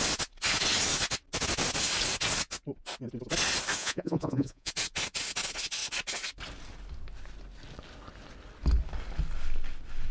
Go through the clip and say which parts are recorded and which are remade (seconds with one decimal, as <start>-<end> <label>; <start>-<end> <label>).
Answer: 0.0-3.8 recorded; 3.8-4.7 remade; 4.7-10.1 recorded